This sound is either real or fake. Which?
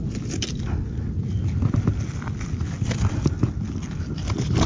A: real